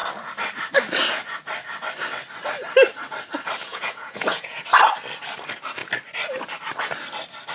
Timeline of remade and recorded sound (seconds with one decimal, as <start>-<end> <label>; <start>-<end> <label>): 0.0-3.7 recorded; 3.7-4.6 remade; 4.6-7.5 recorded